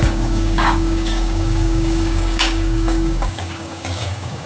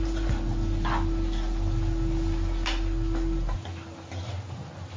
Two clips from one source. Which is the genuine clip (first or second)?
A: second